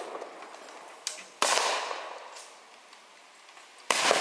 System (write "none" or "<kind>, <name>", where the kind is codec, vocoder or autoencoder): none